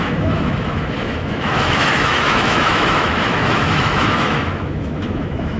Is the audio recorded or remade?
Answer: remade